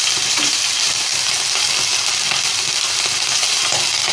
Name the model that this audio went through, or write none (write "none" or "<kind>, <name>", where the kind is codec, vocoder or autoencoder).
none